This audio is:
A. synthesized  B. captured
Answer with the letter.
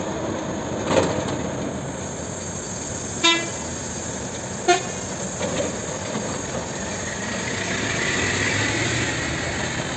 B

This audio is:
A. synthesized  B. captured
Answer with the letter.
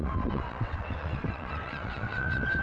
A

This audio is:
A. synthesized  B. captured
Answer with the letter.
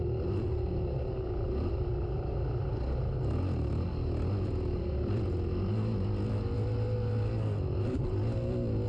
B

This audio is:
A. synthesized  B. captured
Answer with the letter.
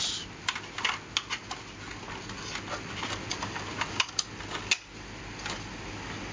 B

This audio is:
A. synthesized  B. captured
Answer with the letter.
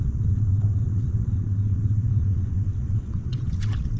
A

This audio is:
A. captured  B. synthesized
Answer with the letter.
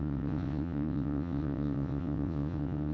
B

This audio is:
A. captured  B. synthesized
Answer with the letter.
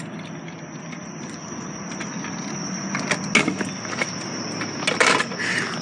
A